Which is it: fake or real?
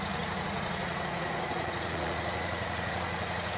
fake